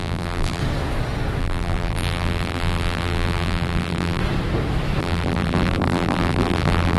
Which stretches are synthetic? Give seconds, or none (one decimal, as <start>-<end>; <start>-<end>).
0.0-0.6; 1.4-4.2; 5.0-7.0